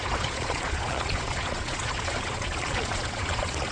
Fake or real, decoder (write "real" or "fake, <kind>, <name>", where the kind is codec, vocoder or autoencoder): fake, vocoder, Vocos